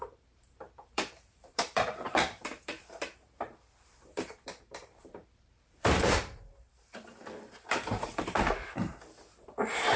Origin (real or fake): fake